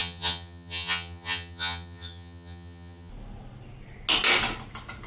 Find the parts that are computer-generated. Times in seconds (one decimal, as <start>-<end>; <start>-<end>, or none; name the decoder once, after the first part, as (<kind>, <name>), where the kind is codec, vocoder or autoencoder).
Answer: 0.0-3.1 (vocoder, HiFi-GAN)